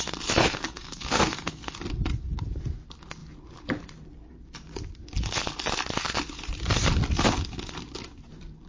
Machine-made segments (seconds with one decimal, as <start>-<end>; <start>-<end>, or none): 0.4-1.8